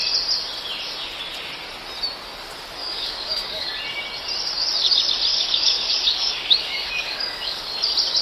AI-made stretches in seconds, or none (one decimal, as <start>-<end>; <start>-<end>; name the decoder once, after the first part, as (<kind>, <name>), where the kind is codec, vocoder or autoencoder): 2.8-3.7 (codec, DAC); 5.3-7.7